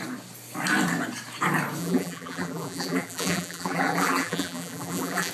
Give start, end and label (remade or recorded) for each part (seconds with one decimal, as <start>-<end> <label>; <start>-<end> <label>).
0.0-1.8 recorded; 1.8-5.3 remade